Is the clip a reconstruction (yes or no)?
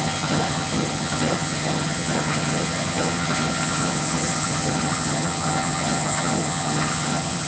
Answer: yes